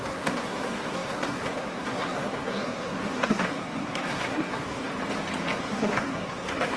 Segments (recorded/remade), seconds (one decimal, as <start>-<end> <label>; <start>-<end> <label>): 0.0-4.9 remade; 4.9-5.6 recorded; 5.6-6.8 remade

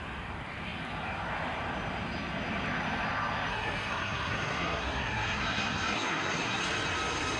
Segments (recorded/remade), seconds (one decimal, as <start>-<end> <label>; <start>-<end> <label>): 0.0-3.5 recorded; 3.5-6.6 remade; 6.6-7.4 recorded